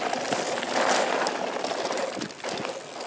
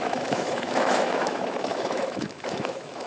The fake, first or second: second